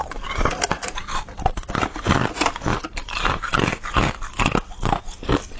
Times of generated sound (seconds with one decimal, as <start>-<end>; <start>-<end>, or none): 0.0-1.7; 2.7-3.5